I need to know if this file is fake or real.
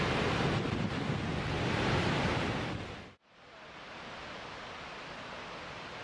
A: real